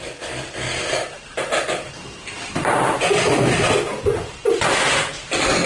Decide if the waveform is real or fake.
fake